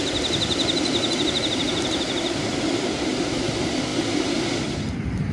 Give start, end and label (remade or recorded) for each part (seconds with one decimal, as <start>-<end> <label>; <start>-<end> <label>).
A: 0.0-2.5 remade; 2.5-3.1 recorded; 3.1-3.9 remade; 3.9-4.6 recorded; 4.6-5.3 remade